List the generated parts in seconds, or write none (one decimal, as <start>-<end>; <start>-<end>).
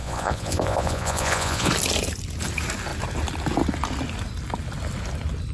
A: 0.0-1.7